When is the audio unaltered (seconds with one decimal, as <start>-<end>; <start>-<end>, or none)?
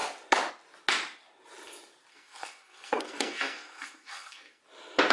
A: 0.0-2.1; 4.6-5.1